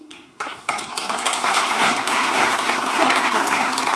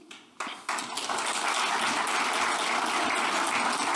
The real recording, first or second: second